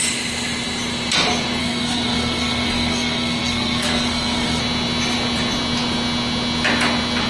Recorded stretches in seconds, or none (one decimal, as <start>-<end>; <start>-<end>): 0.0-1.6; 4.6-7.3